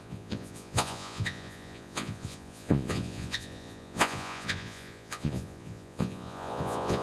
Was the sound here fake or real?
fake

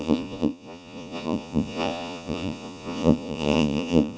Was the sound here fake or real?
fake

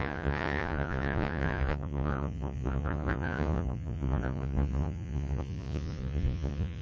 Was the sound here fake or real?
fake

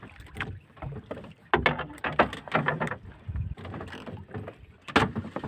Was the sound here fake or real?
real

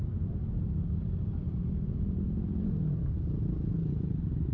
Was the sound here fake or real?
real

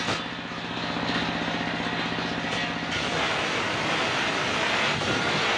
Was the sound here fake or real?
real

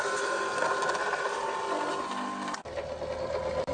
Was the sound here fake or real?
real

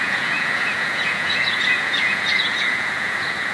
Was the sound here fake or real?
fake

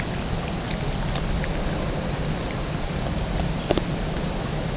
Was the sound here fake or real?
real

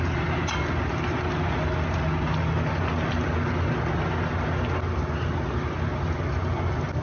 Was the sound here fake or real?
real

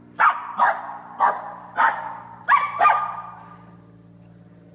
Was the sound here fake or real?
real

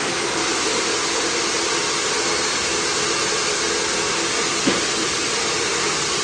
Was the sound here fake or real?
real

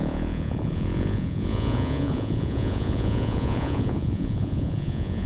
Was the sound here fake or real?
fake